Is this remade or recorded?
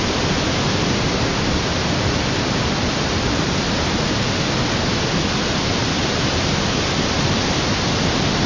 recorded